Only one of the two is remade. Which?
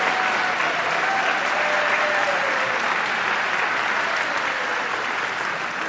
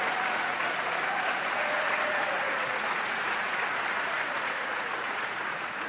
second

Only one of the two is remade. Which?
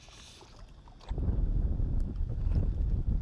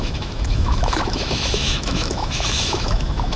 second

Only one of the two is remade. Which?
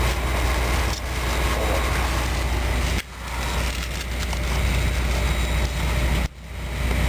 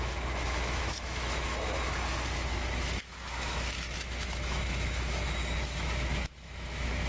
second